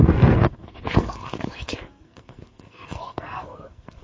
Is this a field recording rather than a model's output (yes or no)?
no